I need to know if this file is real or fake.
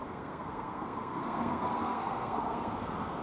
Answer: fake